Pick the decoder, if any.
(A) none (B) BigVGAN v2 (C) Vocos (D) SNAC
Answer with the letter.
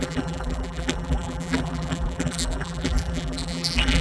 B